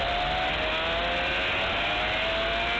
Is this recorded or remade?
recorded